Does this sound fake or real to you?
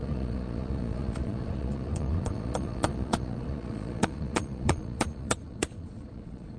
fake